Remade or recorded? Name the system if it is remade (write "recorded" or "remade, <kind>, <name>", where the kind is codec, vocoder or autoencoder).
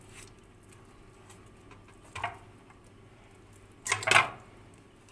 recorded